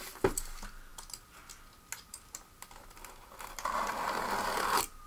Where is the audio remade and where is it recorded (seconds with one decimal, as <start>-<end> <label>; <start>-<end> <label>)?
0.0-5.1 recorded